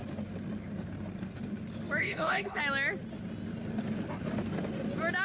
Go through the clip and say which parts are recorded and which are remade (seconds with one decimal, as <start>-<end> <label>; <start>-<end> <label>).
0.0-2.0 recorded; 2.0-2.6 remade; 2.6-5.2 recorded